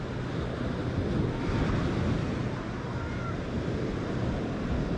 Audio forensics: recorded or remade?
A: recorded